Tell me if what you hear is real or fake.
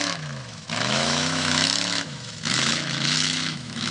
fake